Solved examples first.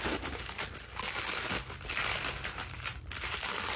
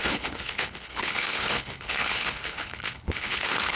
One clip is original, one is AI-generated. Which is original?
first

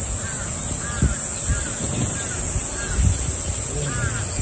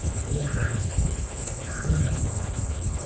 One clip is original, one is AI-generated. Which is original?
first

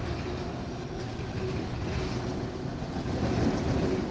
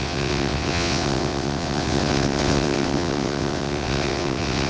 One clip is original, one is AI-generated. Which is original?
first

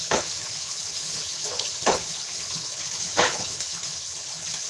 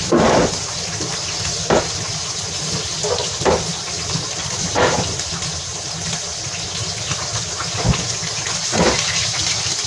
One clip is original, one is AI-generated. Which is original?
second